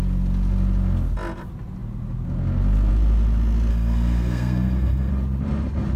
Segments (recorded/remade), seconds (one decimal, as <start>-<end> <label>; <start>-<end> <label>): 0.0-3.7 recorded; 3.7-5.1 remade; 5.1-6.0 recorded